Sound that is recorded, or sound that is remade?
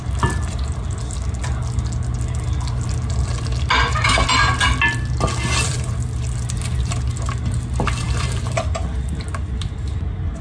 recorded